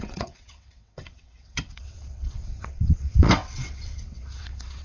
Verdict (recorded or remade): remade